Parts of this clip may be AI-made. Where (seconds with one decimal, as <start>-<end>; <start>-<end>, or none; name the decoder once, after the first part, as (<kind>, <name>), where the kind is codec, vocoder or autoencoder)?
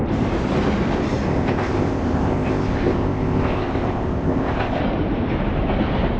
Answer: 1.3-4.8 (codec, ZipCodec)